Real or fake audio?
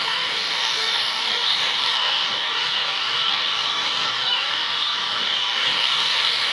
fake